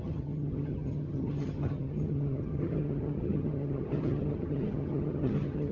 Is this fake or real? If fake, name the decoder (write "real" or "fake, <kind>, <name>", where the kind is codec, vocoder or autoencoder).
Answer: fake, vocoder, HiFi-GAN